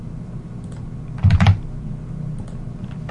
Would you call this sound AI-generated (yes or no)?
no